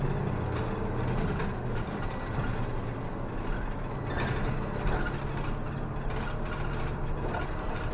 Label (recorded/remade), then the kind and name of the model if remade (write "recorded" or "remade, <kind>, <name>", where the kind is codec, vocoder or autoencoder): recorded